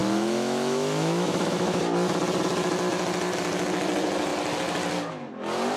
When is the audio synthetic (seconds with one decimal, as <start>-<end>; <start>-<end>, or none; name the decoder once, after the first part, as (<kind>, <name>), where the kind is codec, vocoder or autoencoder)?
0.0-1.8 (autoencoder, DAC-VAE)